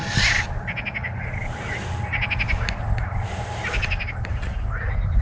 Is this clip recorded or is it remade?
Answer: recorded